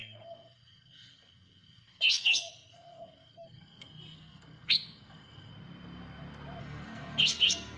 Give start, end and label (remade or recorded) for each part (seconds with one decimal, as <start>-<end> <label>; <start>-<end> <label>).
0.0-5.5 remade; 5.5-6.6 recorded; 6.6-7.8 remade